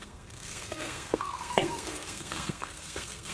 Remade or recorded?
remade